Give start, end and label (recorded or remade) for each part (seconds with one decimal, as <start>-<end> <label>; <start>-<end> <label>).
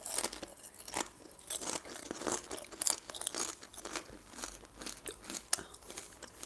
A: 0.0-6.5 recorded